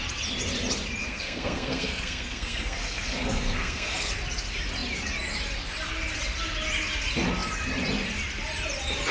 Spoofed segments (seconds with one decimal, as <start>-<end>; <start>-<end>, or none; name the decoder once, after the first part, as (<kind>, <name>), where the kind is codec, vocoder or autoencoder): 1.0-4.1 (codec, SNAC)